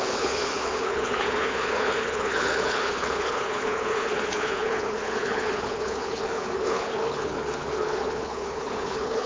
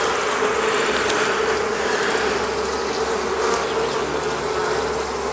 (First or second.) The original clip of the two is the second